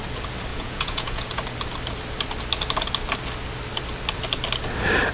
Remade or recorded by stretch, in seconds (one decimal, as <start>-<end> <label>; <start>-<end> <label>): 0.0-0.5 recorded; 0.5-1.4 remade; 1.4-5.1 recorded